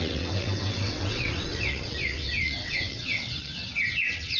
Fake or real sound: fake